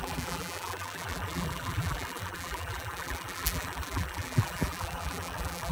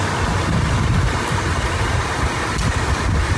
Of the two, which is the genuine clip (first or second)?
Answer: second